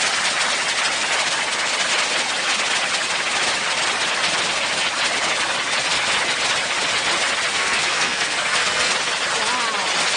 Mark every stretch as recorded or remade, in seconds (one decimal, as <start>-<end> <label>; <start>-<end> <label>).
0.0-7.5 recorded; 7.5-8.9 remade; 8.9-10.2 recorded